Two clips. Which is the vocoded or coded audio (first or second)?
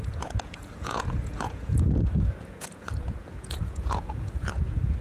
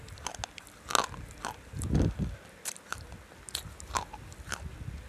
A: first